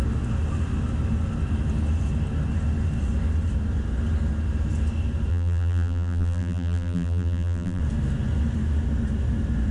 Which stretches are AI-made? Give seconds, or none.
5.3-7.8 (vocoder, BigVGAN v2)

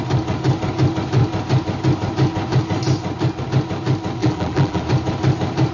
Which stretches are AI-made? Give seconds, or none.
4.2-4.8 (vocoder, BigVGAN v2)

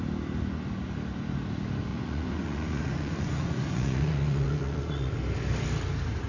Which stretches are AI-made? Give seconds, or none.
1.9-5.1 (vocoder, Vocos)

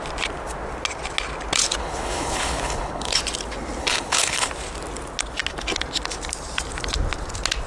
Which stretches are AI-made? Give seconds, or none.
1.8-3.2 (codec, HILCodec); 3.8-4.5

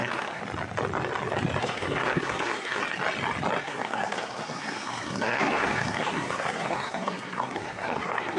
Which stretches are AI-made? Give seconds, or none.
0.0-0.4 (codec, SNAC); 1.6-2.8; 3.6-8.4

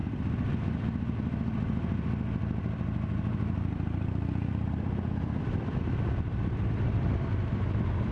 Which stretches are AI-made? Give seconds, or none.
0.0-8.1 (vocoder, BigVGAN v2)

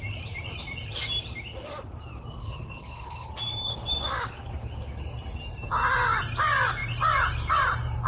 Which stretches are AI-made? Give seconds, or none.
2.4-3.3 (codec, HILCodec)

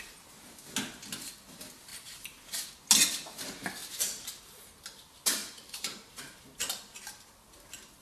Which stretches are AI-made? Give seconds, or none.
1.9-2.6 (vocoder, BigVGAN v2); 3.8-4.6; 5.4-6.2